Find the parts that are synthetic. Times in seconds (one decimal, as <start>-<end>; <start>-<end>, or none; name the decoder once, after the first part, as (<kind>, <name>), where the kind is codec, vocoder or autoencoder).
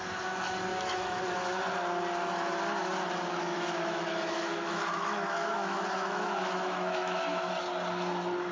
0.7-1.2 (autoencoder, DAC-VAE); 3.5-7.5